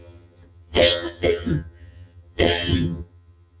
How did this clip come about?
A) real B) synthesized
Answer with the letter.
B